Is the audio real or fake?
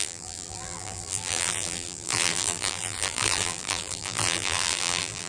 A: fake